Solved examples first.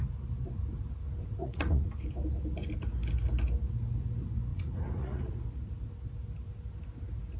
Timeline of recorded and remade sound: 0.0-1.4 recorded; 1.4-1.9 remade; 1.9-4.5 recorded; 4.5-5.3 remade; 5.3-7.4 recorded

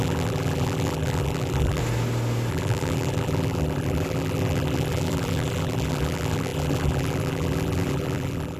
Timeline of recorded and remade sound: 0.0-1.8 remade; 1.8-2.5 recorded; 2.5-8.6 remade

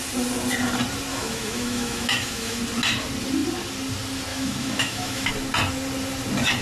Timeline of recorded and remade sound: 0.0-1.1 recorded; 1.1-2.6 remade; 2.6-4.3 recorded; 4.3-5.3 remade; 5.3-6.6 recorded